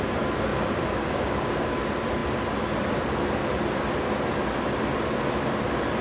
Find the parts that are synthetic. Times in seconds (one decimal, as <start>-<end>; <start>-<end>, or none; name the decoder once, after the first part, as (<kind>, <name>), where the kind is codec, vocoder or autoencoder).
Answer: 0.5-1.8 (codec, DAC)